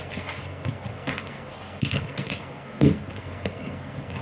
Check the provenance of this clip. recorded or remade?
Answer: remade